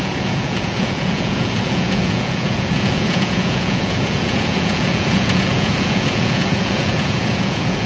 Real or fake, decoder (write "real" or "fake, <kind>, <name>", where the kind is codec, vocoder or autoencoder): fake, vocoder, Vocos